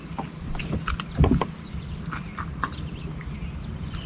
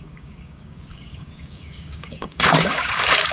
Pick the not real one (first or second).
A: second